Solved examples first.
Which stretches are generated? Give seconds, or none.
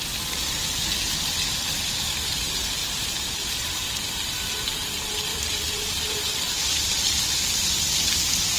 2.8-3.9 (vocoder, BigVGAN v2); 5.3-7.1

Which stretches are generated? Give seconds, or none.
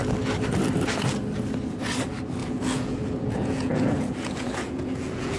2.4-5.4 (vocoder, Vocos)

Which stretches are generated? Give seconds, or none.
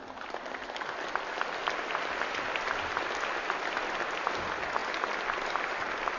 none